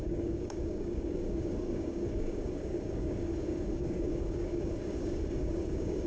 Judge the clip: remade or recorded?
remade